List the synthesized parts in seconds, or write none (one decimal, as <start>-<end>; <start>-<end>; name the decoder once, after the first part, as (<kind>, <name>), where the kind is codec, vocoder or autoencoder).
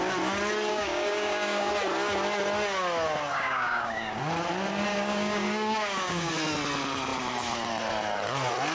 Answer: 0.7-1.7 (codec, DAC); 3.3-4.2; 4.9-6.3